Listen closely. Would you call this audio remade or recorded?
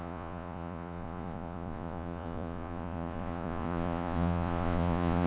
remade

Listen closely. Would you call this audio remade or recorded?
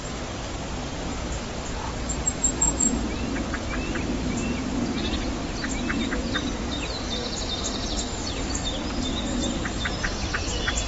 recorded